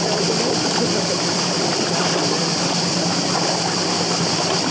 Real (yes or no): yes